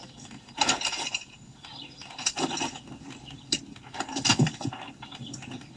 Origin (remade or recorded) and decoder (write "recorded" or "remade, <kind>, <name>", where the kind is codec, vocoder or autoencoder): recorded